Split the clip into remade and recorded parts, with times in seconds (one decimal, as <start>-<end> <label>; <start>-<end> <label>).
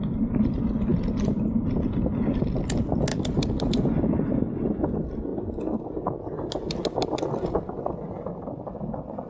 0.0-9.3 recorded